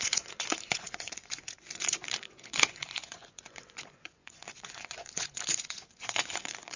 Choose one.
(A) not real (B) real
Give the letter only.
A